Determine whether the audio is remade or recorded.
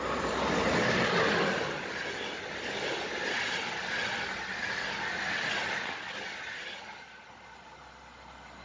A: recorded